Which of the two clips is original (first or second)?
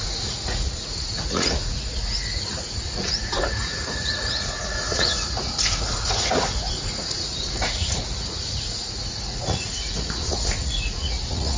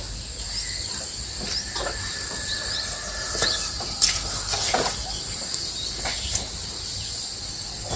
second